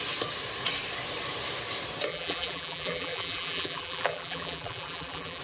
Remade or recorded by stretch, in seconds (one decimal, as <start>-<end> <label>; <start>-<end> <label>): 0.0-2.1 recorded; 2.1-5.4 remade